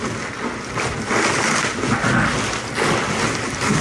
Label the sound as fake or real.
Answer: real